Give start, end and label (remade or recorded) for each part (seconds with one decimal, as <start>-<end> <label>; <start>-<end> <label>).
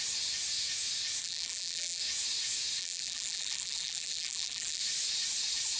0.0-1.2 recorded; 1.2-2.0 remade; 2.0-2.8 recorded; 2.8-4.8 remade; 4.8-5.8 recorded